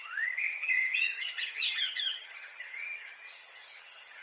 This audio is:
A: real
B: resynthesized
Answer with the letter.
B